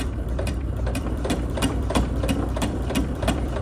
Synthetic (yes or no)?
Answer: yes